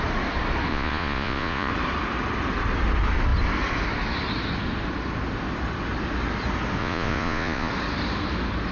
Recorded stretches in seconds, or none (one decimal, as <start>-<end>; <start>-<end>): 0.0-0.7; 1.7-6.8; 7.7-8.7